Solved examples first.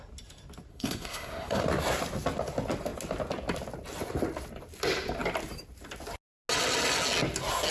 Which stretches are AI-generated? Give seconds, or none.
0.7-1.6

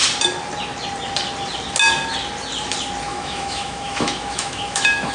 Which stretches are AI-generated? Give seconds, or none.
3.1-5.1

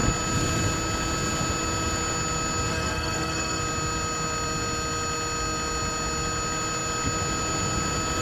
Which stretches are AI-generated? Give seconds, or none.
2.7-3.6

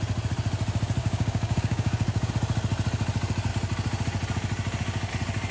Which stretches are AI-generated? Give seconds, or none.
1.0-2.3

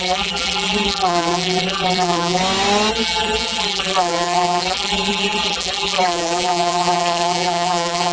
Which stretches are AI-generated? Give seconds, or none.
0.0-2.4; 2.9-8.1

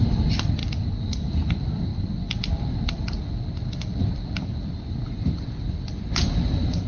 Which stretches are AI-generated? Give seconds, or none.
0.6-1.3; 1.9-3.1